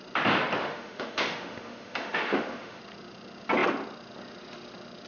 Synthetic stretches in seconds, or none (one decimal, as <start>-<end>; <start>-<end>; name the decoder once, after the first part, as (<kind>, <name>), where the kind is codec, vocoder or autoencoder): 0.6-2.8 (autoencoder, DAC-VAE)

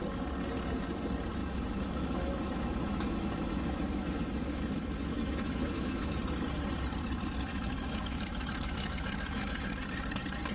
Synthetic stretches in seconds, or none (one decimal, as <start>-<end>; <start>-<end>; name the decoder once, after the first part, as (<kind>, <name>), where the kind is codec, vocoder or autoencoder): 1.4-6.2 (autoencoder, DAC-VAE); 7.5-9.8

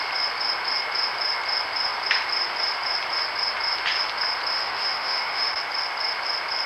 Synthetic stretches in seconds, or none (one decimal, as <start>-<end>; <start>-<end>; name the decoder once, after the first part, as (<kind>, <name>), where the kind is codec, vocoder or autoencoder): 4.5-5.6 (autoencoder, DAC-VAE)

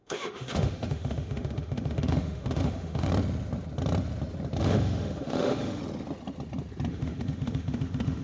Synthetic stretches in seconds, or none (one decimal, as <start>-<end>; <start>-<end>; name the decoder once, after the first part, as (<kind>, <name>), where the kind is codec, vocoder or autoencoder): 0.0-3.1 (autoencoder, DAC-VAE); 4.6-5.8; 6.9-8.2

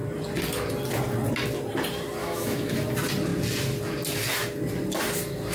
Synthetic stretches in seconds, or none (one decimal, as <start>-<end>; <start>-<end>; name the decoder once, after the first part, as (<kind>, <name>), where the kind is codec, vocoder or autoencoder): 2.2-2.7 (autoencoder, DAC-VAE)

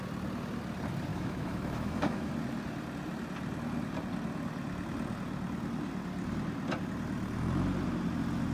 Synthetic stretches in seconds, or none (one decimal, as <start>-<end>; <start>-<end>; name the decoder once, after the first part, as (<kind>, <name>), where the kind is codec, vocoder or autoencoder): 1.1-2.3 (autoencoder, DAC-VAE)

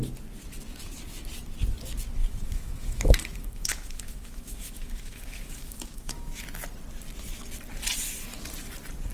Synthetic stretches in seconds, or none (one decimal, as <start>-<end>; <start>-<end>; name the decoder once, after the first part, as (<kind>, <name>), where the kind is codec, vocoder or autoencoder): 2.2-6.4 (autoencoder, DAC-VAE)

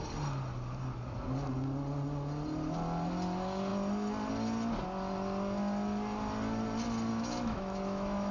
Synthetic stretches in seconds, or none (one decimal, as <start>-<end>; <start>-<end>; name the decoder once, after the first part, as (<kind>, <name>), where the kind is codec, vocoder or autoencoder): 7.1-8.3 (autoencoder, DAC-VAE)